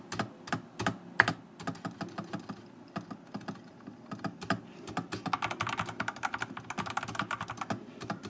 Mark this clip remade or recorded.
recorded